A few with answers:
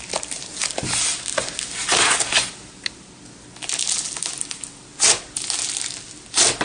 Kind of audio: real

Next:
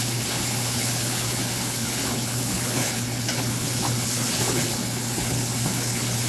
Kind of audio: fake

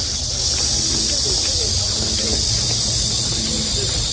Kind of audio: real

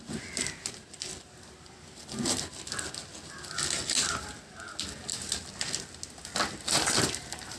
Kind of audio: real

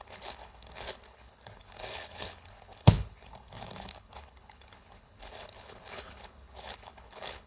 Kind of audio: fake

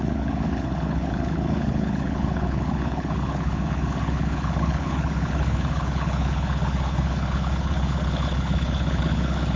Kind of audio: fake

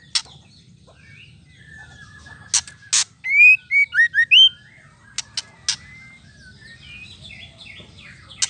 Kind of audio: real